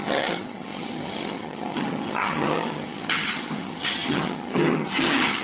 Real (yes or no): no